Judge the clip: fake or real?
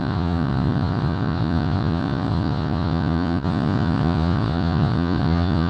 fake